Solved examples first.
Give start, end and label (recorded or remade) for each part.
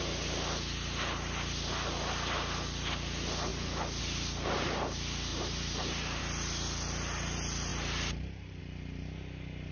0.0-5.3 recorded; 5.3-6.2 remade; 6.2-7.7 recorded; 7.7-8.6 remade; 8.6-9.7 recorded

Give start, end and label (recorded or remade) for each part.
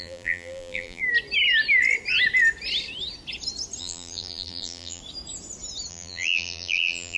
0.0-1.0 remade; 1.0-3.8 recorded; 3.8-5.0 remade; 5.0-5.9 recorded; 5.9-7.2 remade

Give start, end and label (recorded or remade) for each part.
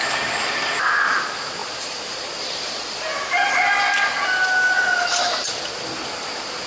0.0-1.6 recorded; 1.6-3.6 remade; 3.6-6.7 recorded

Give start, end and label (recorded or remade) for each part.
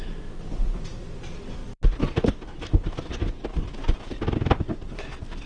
0.0-1.6 remade; 1.6-4.9 recorded; 4.9-5.5 remade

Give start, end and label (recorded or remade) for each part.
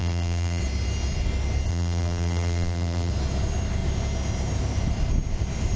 0.0-0.6 remade; 0.6-1.7 recorded; 1.7-3.1 remade; 3.1-5.8 recorded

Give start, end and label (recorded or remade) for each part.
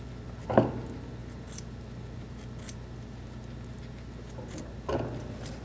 0.0-5.6 recorded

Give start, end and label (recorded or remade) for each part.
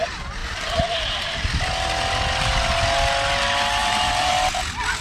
0.0-3.8 recorded; 3.8-4.3 remade; 4.3-5.0 recorded